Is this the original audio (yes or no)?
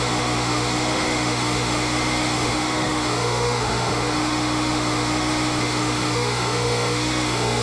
no